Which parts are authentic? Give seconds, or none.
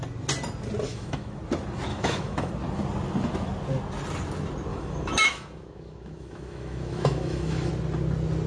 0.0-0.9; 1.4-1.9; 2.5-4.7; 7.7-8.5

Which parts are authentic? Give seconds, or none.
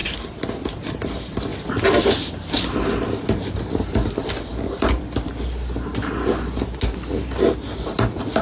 0.0-8.4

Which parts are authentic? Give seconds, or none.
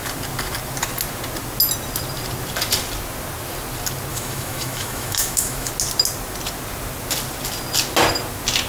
0.0-4.1; 5.7-8.7